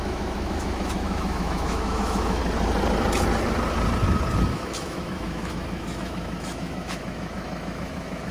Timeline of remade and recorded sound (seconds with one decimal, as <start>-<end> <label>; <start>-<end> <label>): 0.0-2.4 remade; 2.4-4.5 recorded; 4.5-8.3 remade